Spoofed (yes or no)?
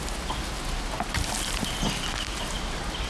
no